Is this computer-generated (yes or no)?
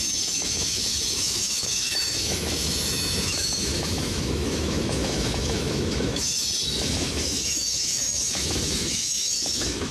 yes